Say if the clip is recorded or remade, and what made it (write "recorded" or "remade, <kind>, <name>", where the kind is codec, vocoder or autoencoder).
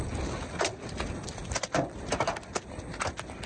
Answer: recorded